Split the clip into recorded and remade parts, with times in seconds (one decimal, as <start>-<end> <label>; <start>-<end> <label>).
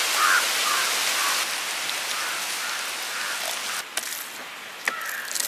0.0-5.5 recorded